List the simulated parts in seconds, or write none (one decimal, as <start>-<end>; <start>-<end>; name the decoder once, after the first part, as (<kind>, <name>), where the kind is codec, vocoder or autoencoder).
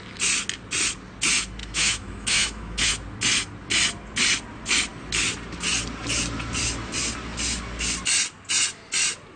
1.6-2.9 (autoencoder, DAC-VAE)